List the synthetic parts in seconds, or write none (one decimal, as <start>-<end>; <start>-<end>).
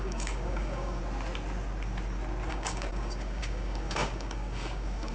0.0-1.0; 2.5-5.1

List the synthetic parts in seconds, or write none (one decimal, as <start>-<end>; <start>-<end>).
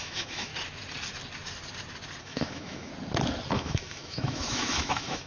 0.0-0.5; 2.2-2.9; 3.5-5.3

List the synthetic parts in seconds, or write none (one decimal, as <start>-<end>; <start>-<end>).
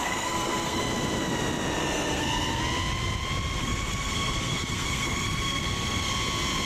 0.0-0.8; 1.8-2.6; 3.6-6.1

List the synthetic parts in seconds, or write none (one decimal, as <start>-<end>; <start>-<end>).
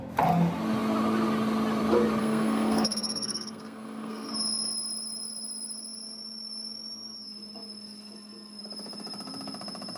2.2-4.3